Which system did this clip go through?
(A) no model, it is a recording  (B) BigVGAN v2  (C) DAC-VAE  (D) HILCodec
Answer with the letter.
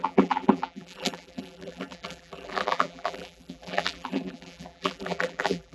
B